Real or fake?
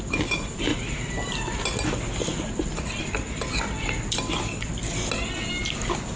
real